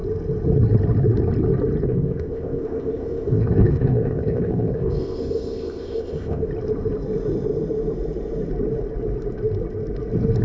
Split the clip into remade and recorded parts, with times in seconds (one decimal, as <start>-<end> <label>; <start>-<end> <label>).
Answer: 0.0-1.8 recorded; 1.8-6.5 remade; 6.5-10.4 recorded